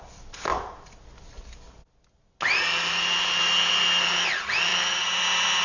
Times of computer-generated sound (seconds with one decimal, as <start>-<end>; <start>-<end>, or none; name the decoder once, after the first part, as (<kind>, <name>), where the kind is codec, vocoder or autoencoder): none